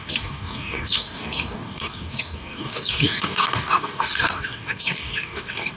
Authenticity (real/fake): fake